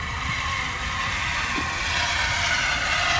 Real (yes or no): no